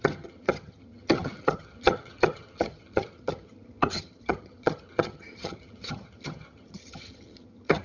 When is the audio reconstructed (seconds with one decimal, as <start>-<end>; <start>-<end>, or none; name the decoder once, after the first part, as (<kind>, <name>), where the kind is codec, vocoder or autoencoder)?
0.0-7.8 (vocoder, HiFi-GAN)